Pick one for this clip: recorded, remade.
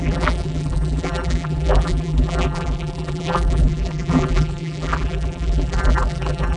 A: remade